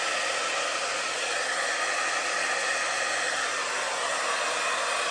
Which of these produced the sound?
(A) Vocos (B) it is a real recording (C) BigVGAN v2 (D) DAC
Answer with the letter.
B